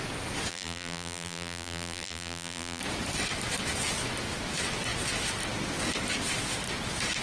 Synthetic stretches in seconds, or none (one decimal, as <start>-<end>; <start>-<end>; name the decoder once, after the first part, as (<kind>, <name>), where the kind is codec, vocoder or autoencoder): 0.5-2.8 (vocoder, BigVGAN v2)